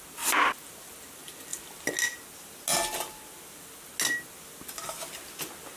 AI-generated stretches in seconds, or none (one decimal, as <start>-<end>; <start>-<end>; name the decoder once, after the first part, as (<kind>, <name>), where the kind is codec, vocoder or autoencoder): none